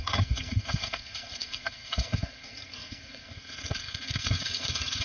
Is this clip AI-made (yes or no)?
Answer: yes